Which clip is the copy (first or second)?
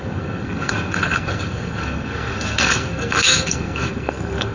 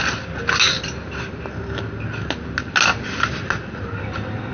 first